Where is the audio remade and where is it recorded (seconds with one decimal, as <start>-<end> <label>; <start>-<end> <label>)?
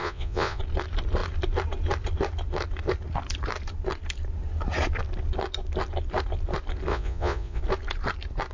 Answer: 0.0-0.6 remade; 0.6-6.9 recorded; 6.9-7.6 remade; 7.6-8.5 recorded